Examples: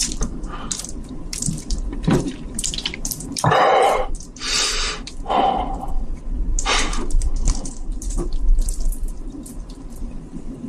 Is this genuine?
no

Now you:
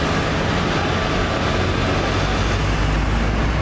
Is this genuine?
yes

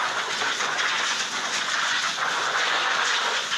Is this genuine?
no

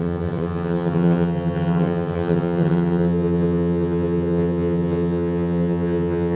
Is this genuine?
no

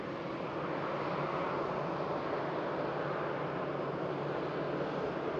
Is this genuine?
yes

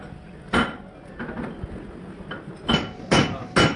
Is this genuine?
yes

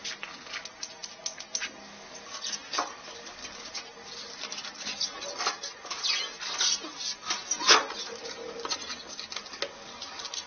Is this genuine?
yes